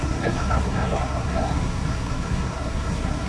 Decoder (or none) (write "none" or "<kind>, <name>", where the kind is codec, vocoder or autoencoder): codec, SNAC